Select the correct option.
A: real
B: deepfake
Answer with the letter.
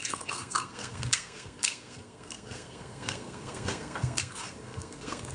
B